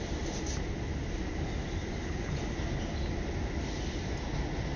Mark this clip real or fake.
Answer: real